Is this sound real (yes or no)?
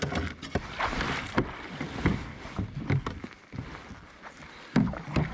yes